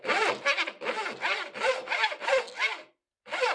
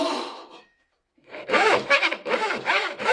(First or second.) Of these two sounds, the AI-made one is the second